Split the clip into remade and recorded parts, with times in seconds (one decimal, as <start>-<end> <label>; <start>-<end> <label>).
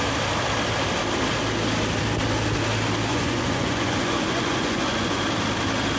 0.0-3.1 recorded; 3.1-5.2 remade; 5.2-6.0 recorded